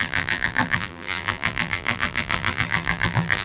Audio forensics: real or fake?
fake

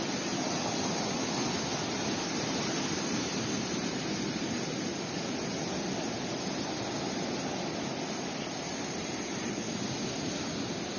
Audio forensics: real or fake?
real